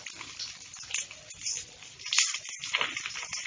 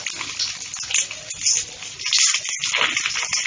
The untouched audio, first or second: second